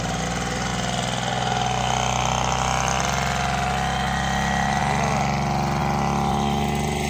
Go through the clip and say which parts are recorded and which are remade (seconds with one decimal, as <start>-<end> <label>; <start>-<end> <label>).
0.0-7.1 recorded